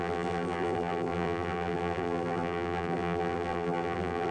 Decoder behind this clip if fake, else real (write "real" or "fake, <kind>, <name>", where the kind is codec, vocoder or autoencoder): fake, vocoder, BigVGAN v2